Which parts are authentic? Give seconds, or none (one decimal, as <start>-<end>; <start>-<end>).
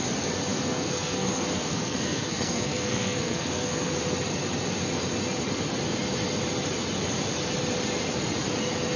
0.0-0.5; 3.9-9.0